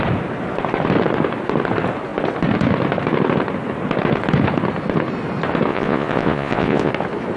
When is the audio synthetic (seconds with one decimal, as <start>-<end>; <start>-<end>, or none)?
5.7-6.9